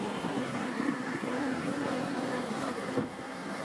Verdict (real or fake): fake